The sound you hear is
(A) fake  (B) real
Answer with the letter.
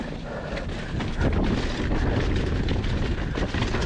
B